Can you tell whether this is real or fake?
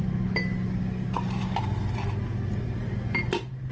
real